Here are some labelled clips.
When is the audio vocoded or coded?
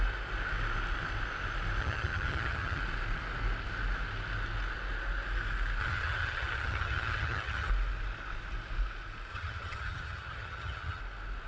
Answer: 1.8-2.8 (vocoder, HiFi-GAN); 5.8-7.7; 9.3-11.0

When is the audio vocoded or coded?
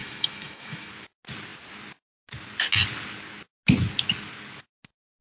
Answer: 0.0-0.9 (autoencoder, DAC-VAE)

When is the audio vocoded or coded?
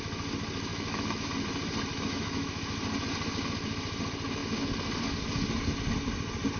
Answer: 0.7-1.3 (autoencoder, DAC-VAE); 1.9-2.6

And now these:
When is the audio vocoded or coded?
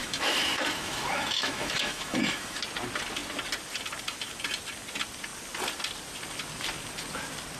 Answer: 0.0-2.6 (autoencoder, DAC-VAE)